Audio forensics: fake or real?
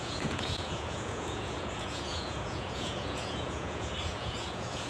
fake